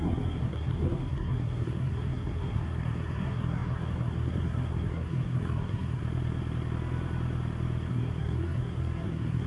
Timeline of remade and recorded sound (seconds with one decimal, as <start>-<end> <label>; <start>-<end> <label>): 0.0-6.0 remade; 6.0-7.9 recorded; 7.9-9.5 remade